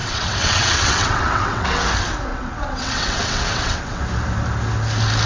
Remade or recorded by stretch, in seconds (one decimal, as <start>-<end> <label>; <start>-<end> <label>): 0.0-1.8 remade; 1.8-2.3 recorded; 2.3-4.0 remade; 4.0-5.3 recorded